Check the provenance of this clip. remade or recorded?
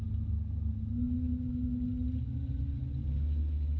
recorded